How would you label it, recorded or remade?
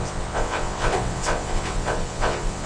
remade